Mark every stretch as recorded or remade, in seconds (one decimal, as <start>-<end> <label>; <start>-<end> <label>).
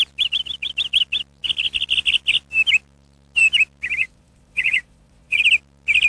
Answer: 0.0-4.0 recorded; 4.0-5.4 remade; 5.4-6.1 recorded